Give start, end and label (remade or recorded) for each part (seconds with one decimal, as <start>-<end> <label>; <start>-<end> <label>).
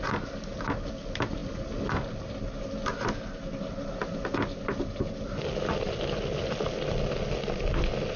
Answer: 0.0-8.2 recorded